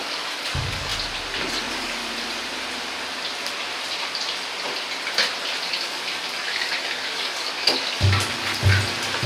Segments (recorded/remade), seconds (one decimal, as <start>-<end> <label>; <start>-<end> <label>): 0.0-0.9 remade; 0.9-1.6 recorded; 1.6-2.0 remade; 2.0-5.7 recorded; 5.7-8.5 remade; 8.5-9.3 recorded